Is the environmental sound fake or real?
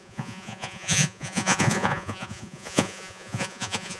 fake